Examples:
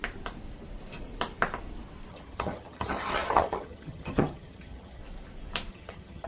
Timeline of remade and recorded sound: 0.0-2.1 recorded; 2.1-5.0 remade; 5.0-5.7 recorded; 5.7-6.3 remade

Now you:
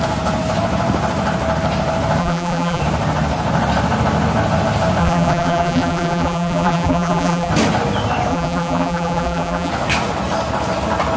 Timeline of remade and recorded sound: 0.0-2.2 recorded; 2.2-2.8 remade; 2.8-5.0 recorded; 5.0-7.5 remade; 7.5-8.3 recorded; 8.3-9.7 remade; 9.7-11.2 recorded

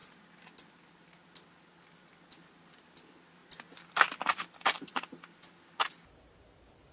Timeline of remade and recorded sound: 0.0-6.9 recorded